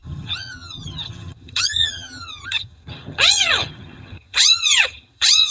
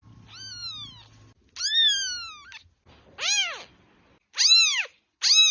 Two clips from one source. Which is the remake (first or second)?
first